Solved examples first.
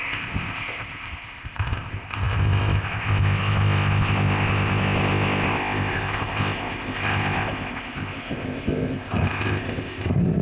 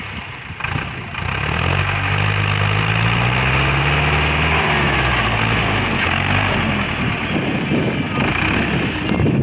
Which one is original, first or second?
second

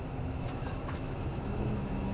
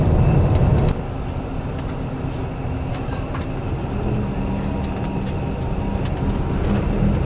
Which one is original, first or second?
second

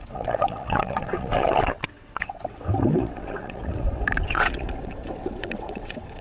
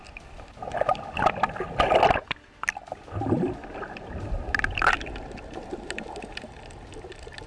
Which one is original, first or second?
second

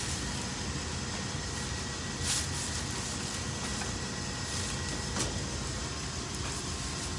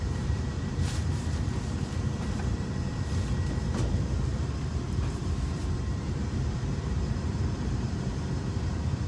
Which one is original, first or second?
first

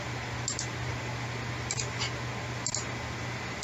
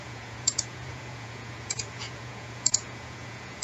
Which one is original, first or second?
first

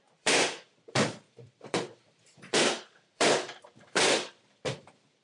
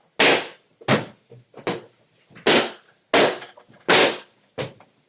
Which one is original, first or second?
second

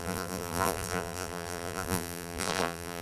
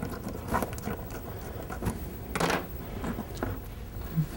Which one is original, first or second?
second